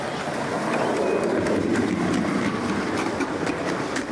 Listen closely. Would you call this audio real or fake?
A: real